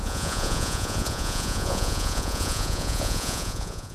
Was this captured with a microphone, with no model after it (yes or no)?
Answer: no